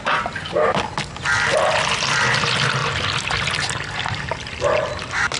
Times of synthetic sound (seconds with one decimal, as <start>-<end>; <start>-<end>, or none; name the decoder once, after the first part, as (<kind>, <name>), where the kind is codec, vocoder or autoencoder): none